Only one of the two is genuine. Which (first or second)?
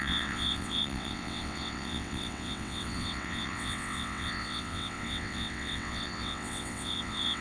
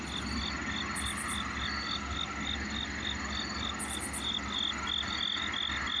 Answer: second